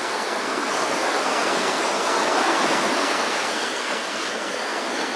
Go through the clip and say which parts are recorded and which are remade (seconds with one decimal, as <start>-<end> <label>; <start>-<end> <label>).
0.0-5.2 remade

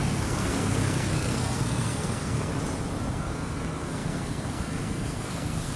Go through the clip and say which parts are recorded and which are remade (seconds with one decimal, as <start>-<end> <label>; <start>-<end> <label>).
0.0-2.5 remade; 2.5-3.1 recorded; 3.1-5.8 remade

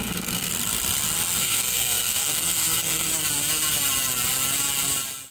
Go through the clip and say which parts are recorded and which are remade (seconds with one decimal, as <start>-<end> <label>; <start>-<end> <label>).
0.0-0.5 remade; 0.5-1.4 recorded; 1.4-3.1 remade; 3.1-5.3 recorded

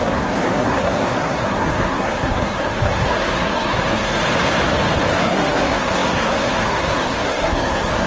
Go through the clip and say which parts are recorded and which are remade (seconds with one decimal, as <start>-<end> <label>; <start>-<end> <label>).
0.0-4.2 remade; 4.2-5.1 recorded; 5.1-8.1 remade

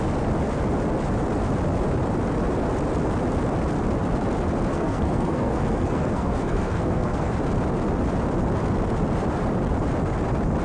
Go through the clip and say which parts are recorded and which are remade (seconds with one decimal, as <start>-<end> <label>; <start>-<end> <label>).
0.0-4.7 recorded; 4.7-7.3 remade; 7.3-10.6 recorded